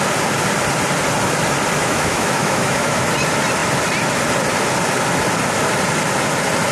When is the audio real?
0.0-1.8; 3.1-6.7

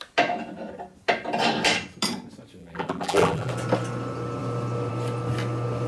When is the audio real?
0.0-2.6; 3.5-5.9

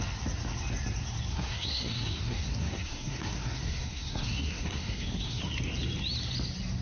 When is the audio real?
0.0-1.3; 5.4-6.8

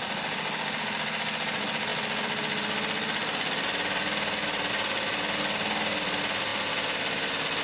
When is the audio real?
0.0-7.6